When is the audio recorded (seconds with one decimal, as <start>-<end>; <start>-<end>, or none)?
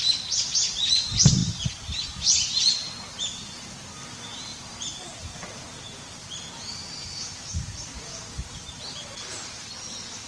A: 0.0-1.4; 2.2-4.5; 9.6-10.3